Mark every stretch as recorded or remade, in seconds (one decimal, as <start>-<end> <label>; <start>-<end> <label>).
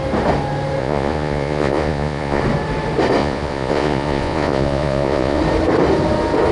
0.0-0.8 recorded; 0.8-2.4 remade; 2.4-3.2 recorded; 3.2-5.4 remade; 5.4-6.5 recorded